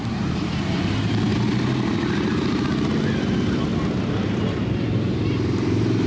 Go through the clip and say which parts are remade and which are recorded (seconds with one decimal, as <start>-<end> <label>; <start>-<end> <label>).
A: 0.0-1.3 remade; 1.3-3.3 recorded; 3.3-3.7 remade; 3.7-4.3 recorded; 4.3-6.1 remade